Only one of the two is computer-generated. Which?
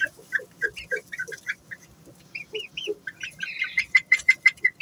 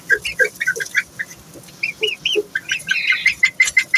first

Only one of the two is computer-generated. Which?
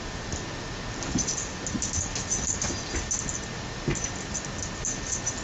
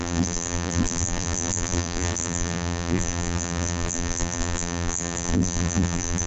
second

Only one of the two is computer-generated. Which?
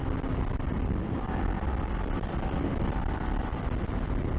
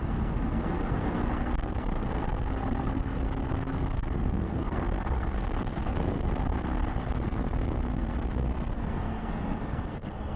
second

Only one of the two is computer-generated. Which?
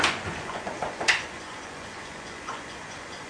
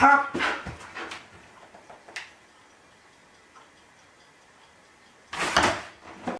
first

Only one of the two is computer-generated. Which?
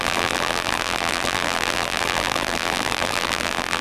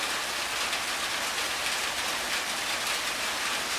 first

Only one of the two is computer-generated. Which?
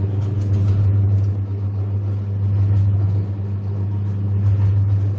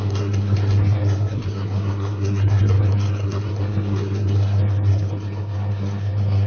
second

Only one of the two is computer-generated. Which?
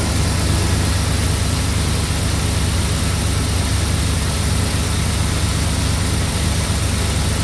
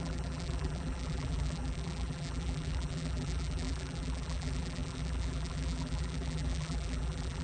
second